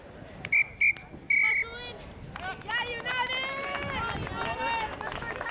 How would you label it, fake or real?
real